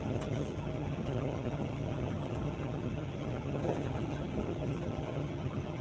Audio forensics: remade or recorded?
remade